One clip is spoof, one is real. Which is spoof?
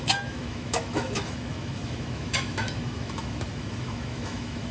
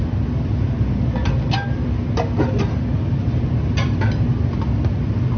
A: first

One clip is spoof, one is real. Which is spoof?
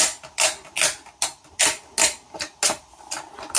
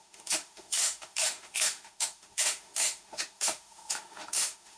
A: second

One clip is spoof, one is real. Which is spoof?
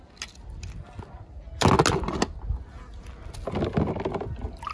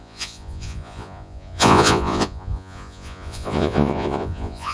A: second